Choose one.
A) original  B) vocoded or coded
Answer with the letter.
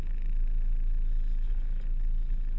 A